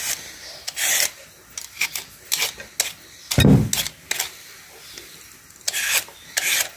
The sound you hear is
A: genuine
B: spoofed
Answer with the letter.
A